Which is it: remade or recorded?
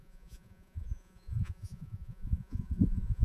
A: remade